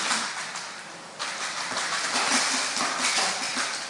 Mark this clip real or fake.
real